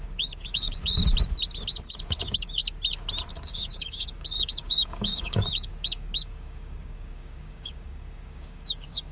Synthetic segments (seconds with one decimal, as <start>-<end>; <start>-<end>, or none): 0.0-1.0; 2.1-2.6; 3.3-9.1